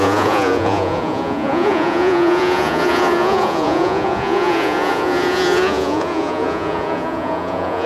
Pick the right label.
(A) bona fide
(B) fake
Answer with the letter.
B